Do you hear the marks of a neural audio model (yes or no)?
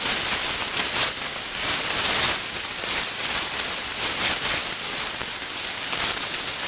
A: no